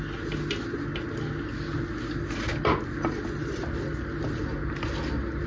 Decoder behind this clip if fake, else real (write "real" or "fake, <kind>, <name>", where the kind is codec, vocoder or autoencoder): real